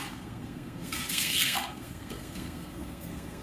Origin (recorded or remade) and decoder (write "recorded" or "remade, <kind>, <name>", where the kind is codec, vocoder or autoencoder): remade, codec, SNAC